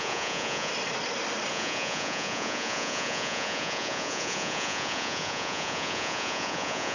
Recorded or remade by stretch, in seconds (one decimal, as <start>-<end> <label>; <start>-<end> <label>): 0.0-0.7 remade; 0.7-1.5 recorded; 1.5-6.9 remade